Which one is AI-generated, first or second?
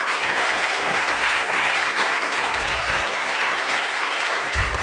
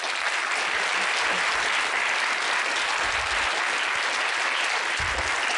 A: first